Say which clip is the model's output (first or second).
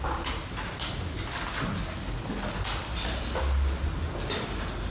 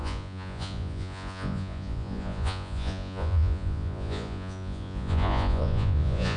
second